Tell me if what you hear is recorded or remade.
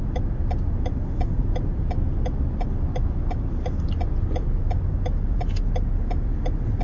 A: recorded